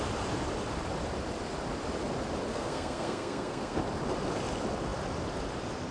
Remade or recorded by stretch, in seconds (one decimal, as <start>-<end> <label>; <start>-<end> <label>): 0.0-2.5 recorded; 2.5-3.8 remade; 3.8-5.9 recorded